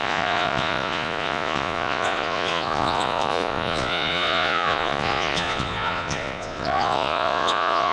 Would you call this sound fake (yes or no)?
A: yes